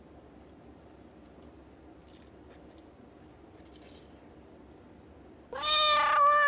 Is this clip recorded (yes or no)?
yes